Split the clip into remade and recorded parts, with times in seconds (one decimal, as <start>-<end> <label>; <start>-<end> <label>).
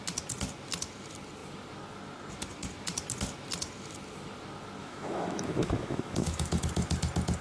0.0-4.8 recorded; 4.8-6.6 remade; 6.6-7.4 recorded